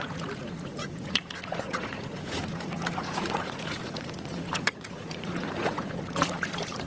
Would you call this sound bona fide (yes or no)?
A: no